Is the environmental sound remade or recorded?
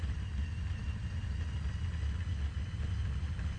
recorded